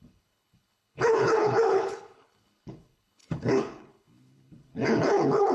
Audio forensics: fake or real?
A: fake